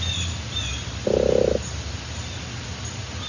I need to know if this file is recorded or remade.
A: recorded